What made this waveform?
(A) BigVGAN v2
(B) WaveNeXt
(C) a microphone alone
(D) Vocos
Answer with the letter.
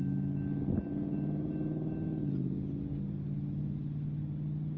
C